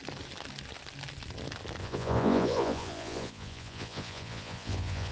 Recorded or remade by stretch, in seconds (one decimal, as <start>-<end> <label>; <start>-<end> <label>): 0.0-1.8 recorded; 1.8-5.1 remade